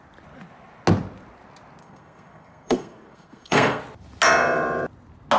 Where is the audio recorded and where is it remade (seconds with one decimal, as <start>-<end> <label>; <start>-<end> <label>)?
0.0-1.8 recorded; 1.8-3.8 remade; 3.8-5.4 recorded